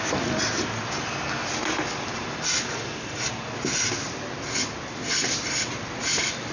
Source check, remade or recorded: recorded